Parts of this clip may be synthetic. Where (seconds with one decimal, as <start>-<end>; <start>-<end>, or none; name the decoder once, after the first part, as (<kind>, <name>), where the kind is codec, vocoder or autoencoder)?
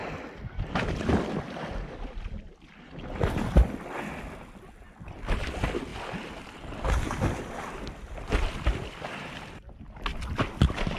none